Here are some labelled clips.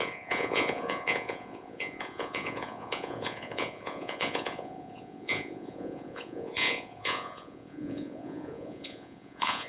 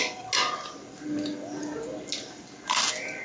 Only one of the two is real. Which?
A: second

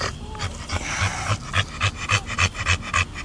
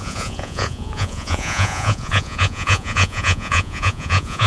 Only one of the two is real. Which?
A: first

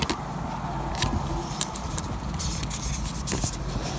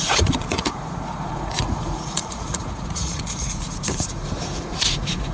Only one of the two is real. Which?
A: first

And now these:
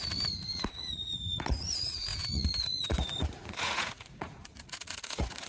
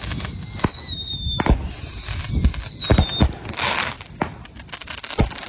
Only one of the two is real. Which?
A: second